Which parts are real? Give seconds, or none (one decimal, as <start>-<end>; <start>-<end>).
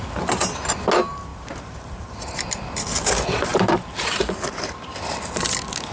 0.0-3.5; 4.9-5.9